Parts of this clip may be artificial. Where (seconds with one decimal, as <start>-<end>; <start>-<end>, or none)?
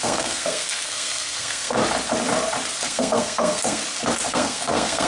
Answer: 0.0-1.8; 2.8-3.8; 4.3-5.1